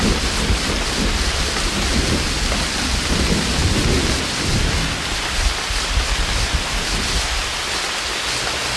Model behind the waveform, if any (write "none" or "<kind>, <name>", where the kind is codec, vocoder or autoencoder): none